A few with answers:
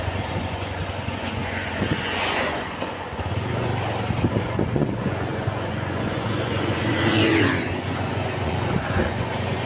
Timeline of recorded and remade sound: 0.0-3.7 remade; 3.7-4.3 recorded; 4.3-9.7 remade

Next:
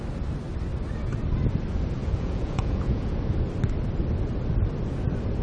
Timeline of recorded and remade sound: 0.0-2.0 recorded; 2.0-3.2 remade; 3.2-5.4 recorded

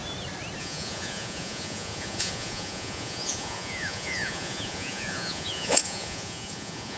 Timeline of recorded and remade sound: 0.0-0.6 recorded; 0.6-7.0 remade

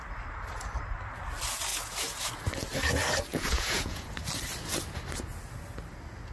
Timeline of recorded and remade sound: 0.0-1.7 recorded; 1.7-2.3 remade; 2.3-3.3 recorded; 3.3-4.1 remade; 4.1-6.3 recorded

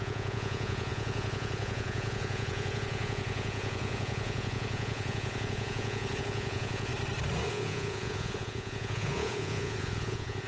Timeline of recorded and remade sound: 0.0-6.9 remade; 6.9-7.5 recorded; 7.5-10.5 remade